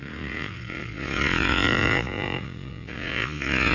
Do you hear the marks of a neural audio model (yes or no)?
yes